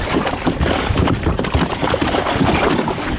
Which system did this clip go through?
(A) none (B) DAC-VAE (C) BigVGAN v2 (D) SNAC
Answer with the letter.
A